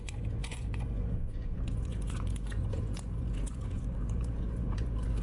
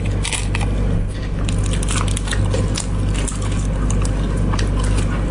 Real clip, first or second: second